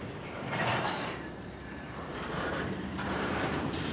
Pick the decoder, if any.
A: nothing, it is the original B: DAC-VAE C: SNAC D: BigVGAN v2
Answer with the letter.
D